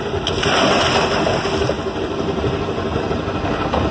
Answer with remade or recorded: recorded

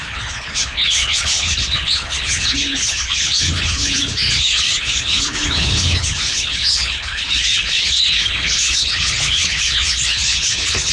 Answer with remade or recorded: remade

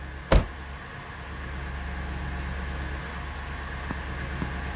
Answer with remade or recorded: recorded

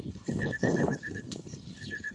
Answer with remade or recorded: remade